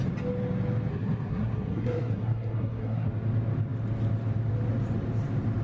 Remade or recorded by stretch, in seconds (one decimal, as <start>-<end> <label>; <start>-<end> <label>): 0.0-0.9 recorded; 0.9-3.1 remade; 3.1-5.6 recorded